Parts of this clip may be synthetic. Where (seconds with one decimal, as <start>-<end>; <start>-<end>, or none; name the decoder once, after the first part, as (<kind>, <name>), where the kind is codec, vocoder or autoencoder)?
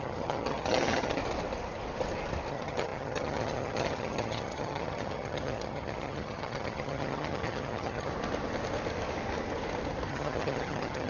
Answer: 0.0-1.2 (vocoder, HiFi-GAN); 2.5-8.1; 10.1-11.1